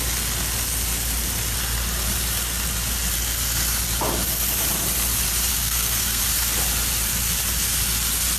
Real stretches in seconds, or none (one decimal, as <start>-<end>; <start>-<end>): 0.0-5.5; 6.2-8.4